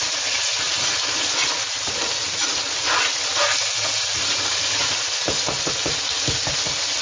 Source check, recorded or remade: recorded